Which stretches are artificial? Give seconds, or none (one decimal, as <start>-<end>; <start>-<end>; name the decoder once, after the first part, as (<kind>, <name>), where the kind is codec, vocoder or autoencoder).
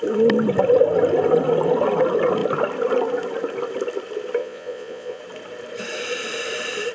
4.4-5.2 (vocoder, Vocos)